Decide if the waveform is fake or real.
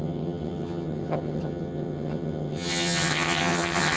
fake